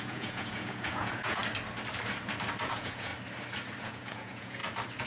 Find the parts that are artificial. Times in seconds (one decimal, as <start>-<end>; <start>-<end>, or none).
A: 0.0-1.4; 2.6-3.1; 3.8-4.6